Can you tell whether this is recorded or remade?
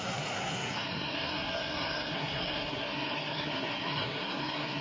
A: remade